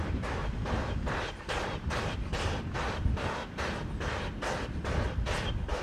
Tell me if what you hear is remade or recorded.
recorded